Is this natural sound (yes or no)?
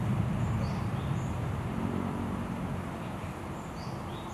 yes